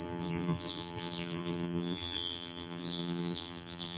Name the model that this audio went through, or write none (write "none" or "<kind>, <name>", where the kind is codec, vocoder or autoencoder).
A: vocoder, BigVGAN v2